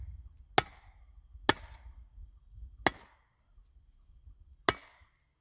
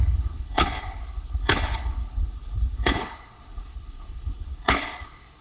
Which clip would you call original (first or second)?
first